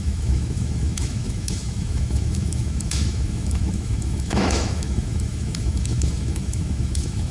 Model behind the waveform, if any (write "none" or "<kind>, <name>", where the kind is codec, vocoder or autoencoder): autoencoder, DAC-VAE